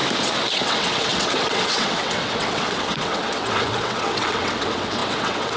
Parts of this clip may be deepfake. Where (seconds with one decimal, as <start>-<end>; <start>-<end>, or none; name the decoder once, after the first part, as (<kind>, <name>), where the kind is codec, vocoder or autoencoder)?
0.5-5.6 (vocoder, WaveNeXt)